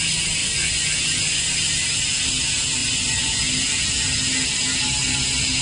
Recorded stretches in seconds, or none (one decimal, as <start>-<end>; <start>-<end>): 0.0-0.4; 1.5-2.8; 3.4-5.6